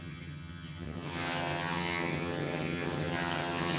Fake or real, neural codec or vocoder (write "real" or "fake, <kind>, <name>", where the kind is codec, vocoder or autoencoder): fake, vocoder, HiFi-GAN